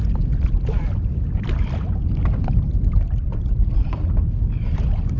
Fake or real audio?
real